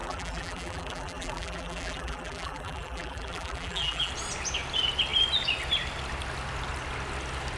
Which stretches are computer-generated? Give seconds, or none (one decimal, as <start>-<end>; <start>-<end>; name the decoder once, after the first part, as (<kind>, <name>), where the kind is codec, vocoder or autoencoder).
0.0-4.1 (vocoder, BigVGAN v2)